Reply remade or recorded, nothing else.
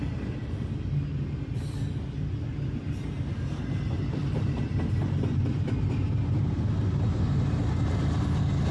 recorded